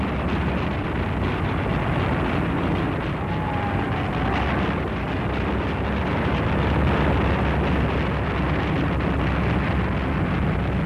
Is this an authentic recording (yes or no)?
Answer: yes